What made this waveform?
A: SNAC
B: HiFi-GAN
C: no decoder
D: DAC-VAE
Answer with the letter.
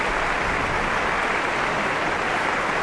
C